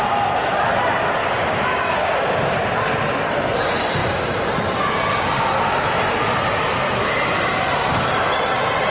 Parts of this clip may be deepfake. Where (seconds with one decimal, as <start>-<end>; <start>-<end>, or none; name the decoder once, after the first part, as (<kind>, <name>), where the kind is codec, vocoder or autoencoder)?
1.2-2.5 (codec, DAC)